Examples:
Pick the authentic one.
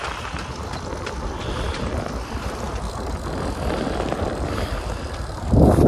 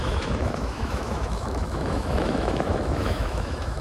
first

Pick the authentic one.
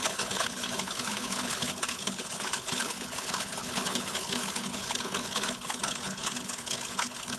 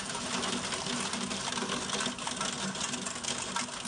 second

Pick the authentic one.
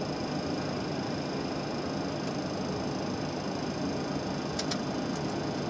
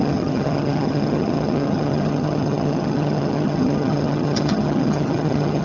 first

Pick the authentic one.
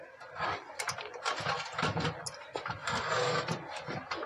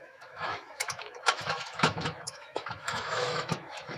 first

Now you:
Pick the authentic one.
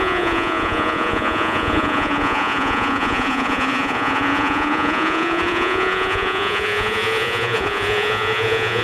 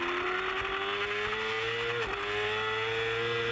second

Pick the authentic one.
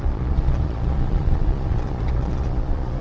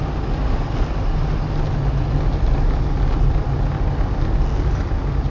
second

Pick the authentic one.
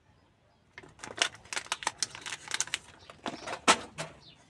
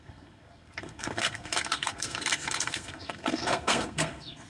first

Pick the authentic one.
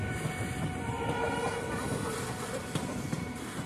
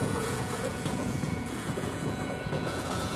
first